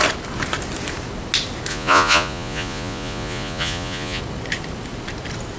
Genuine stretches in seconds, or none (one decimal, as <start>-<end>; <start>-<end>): 0.0-1.7; 4.2-5.6